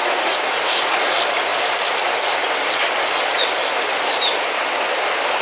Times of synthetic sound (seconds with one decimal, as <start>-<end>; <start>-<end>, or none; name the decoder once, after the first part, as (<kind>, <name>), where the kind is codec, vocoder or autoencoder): 0.0-1.0 (vocoder, Vocos)